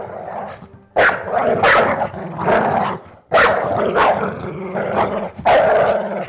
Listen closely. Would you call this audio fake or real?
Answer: real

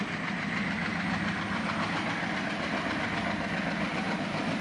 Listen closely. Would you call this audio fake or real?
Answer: real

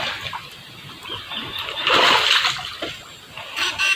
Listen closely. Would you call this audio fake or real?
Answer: real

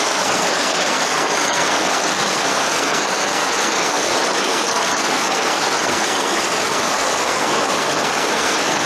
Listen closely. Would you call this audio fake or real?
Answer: fake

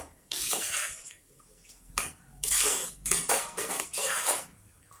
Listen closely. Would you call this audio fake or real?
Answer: fake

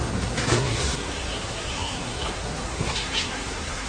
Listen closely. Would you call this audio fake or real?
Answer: fake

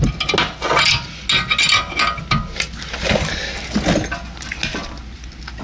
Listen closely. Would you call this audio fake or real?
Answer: real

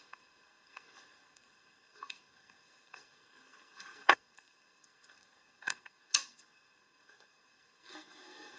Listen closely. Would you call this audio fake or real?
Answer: fake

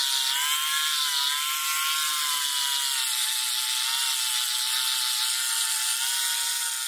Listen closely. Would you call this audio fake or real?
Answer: real